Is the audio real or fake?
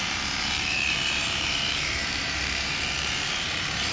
fake